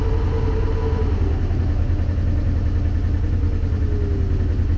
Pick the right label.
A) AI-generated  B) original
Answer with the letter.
B